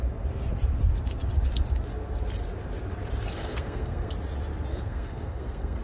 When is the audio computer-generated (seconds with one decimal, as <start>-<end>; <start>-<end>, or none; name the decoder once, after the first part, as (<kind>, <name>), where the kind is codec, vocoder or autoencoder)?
3.4-4.1 (codec, SNAC); 4.7-5.8